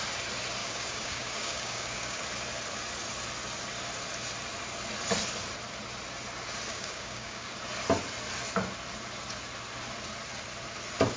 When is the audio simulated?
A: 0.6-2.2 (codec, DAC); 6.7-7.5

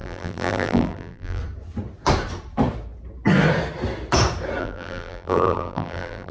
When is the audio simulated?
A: 0.0-1.4 (vocoder, BigVGAN v2); 4.6-6.3

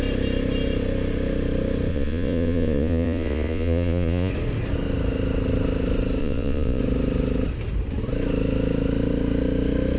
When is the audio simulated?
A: 1.9-4.3 (vocoder, Vocos); 6.2-6.8

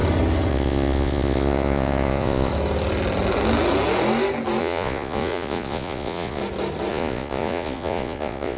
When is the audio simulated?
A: 0.5-2.5 (vocoder, Vocos); 4.6-6.4; 6.9-8.6

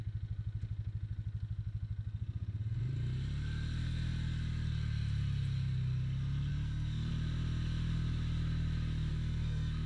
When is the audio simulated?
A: 6.5-7.1 (codec, SNAC); 9.1-9.9

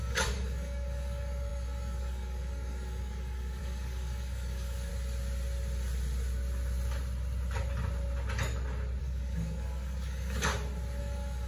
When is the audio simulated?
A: 0.0-4.9 (codec, DAC); 9.0-10.5; 11.0-11.5

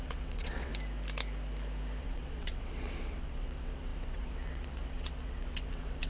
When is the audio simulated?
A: 0.0-0.7 (vocoder, WaveNeXt); 2.0-6.1

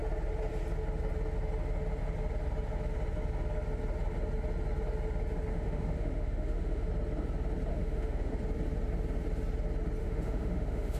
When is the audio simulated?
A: 5.5-6.9 (autoencoder, DAC-VAE); 7.7-8.3; 10.0-11.0